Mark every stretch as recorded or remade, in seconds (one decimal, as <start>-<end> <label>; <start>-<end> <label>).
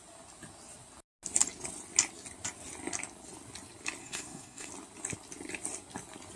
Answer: 0.0-4.0 recorded; 4.0-4.7 remade; 4.7-6.4 recorded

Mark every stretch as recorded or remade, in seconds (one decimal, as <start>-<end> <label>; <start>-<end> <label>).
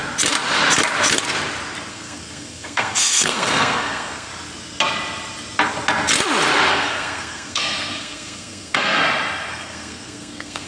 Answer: 0.0-1.9 recorded; 1.9-4.3 remade; 4.3-6.7 recorded; 6.7-9.0 remade; 9.0-9.5 recorded; 9.5-10.7 remade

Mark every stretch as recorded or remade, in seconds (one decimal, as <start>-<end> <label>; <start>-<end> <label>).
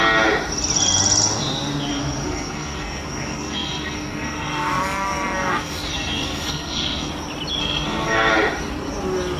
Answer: 0.0-1.9 recorded; 1.9-7.1 remade; 7.1-7.6 recorded; 7.6-8.3 remade; 8.3-9.4 recorded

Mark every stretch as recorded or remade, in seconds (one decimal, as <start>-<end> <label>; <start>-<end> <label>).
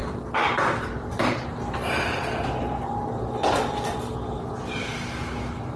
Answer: 0.0-5.8 recorded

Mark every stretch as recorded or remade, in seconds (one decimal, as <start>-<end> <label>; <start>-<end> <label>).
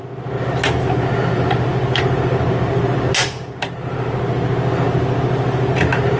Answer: 0.0-6.2 recorded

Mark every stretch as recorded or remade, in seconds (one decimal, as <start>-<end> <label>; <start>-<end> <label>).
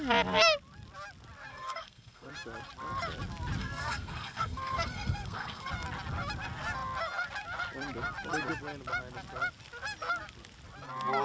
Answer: 0.0-1.5 recorded; 1.5-2.3 remade; 2.3-3.6 recorded; 3.6-5.7 remade; 5.7-11.2 recorded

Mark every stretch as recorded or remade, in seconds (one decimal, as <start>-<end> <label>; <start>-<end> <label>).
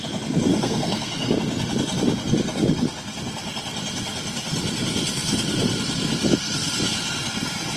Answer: 0.0-0.5 recorded; 0.5-1.3 remade; 1.3-7.8 recorded